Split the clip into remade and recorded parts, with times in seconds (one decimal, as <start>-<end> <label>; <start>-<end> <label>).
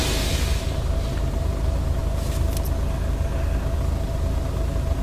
0.0-2.0 remade; 2.0-3.8 recorded; 3.8-5.0 remade